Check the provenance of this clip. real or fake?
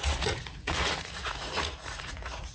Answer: fake